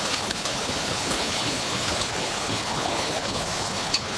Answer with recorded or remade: remade